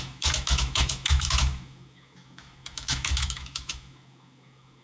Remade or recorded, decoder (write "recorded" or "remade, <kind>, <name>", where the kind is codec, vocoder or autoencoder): remade, autoencoder, DAC-VAE